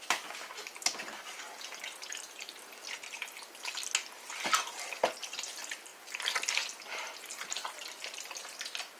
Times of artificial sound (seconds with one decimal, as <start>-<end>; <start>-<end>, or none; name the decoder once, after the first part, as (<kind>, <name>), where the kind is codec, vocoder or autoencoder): none

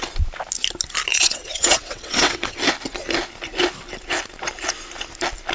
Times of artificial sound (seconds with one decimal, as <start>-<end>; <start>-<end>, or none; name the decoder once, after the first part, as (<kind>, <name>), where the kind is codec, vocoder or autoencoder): 1.1-2.6 (vocoder, WaveNeXt)